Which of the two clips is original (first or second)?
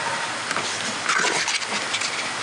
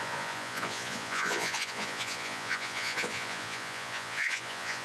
first